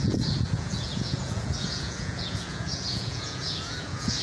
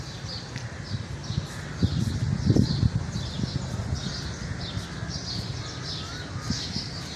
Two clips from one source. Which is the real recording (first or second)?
second